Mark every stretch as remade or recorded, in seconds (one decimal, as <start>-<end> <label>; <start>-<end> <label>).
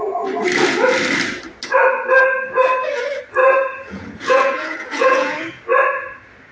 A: 0.0-3.4 recorded; 3.4-5.6 remade; 5.6-6.5 recorded